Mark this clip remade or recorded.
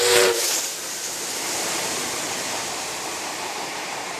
remade